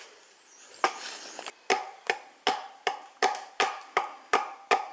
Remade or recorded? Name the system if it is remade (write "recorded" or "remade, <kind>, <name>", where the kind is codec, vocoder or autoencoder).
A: recorded